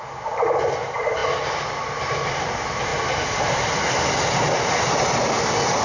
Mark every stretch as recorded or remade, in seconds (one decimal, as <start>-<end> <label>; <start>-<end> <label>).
0.0-5.8 recorded

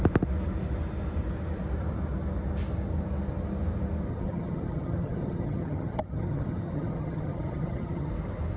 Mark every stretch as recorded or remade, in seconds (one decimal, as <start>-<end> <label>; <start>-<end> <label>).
0.0-4.1 recorded; 4.1-8.1 remade; 8.1-8.6 recorded

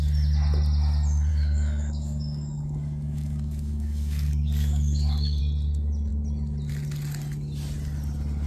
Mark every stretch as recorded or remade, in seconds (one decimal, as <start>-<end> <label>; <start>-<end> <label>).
0.0-1.3 recorded; 1.3-5.4 remade; 5.4-8.5 recorded

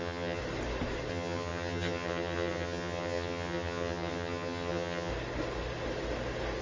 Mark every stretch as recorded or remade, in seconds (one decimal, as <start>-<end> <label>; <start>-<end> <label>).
0.0-0.4 remade; 0.4-1.1 recorded; 1.1-5.1 remade; 5.1-6.6 recorded

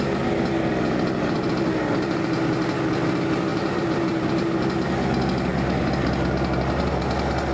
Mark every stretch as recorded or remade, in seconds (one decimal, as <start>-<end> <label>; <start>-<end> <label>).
0.0-3.5 recorded; 3.5-4.1 remade; 4.1-5.5 recorded; 5.5-6.1 remade; 6.1-7.5 recorded

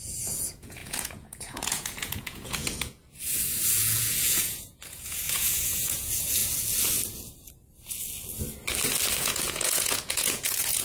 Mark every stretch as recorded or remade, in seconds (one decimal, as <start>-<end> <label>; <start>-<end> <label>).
0.0-3.0 remade; 3.0-3.7 recorded; 3.7-6.4 remade; 6.4-9.2 recorded; 9.2-10.8 remade

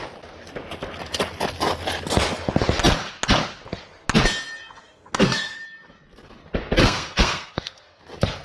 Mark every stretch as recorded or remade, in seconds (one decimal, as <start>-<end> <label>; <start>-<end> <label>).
0.0-4.8 recorded; 4.8-5.6 remade; 5.6-6.8 recorded; 6.8-8.0 remade; 8.0-8.4 recorded